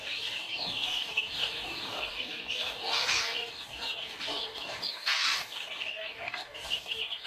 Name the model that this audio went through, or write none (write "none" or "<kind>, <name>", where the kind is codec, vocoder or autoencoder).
codec, DAC